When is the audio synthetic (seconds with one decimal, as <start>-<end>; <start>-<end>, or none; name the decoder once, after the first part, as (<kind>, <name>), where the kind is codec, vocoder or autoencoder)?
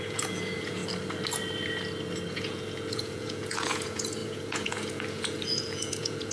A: 0.0-0.8 (vocoder, Vocos); 2.3-6.3